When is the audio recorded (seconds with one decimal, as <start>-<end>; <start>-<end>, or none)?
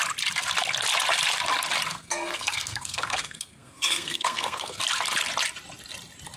0.0-1.9; 4.8-6.4